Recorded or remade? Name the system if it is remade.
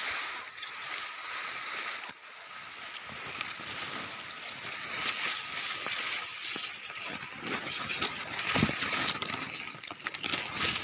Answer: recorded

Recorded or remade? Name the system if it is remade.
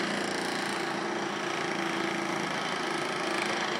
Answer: recorded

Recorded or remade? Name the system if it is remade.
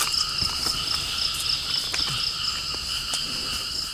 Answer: recorded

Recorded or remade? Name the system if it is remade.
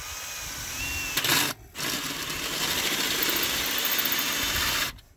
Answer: recorded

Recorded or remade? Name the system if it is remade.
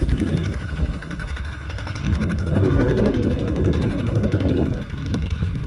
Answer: remade, codec, SNAC